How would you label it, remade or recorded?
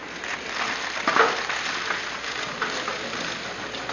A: recorded